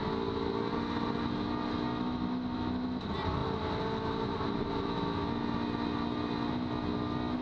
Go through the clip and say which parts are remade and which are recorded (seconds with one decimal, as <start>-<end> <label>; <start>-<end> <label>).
0.0-7.4 recorded